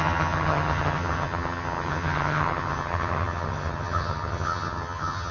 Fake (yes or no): yes